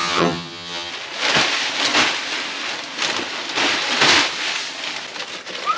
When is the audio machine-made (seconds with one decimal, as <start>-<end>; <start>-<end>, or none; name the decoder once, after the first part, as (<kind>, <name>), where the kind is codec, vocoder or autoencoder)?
0.0-0.9 (vocoder, HiFi-GAN)